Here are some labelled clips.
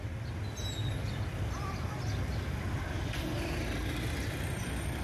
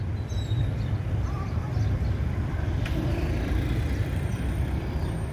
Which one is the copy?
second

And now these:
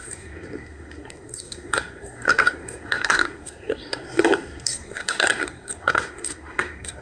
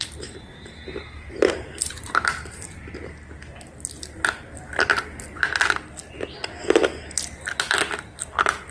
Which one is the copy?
first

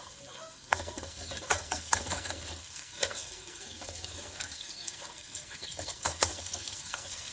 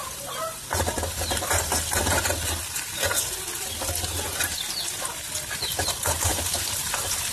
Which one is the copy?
first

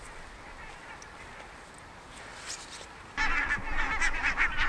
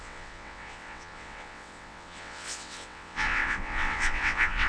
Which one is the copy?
second